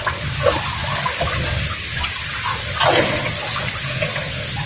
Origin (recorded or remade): recorded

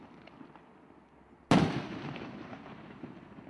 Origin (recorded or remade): recorded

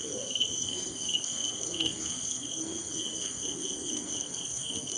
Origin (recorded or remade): remade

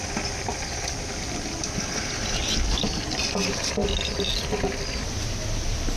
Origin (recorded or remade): recorded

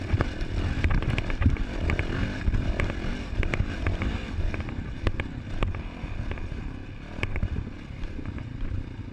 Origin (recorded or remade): recorded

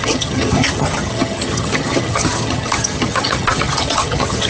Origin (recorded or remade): remade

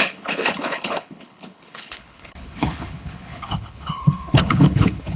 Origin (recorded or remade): remade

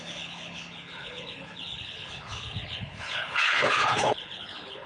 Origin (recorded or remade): remade